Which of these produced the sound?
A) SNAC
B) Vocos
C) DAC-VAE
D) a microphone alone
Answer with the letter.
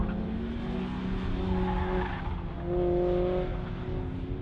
D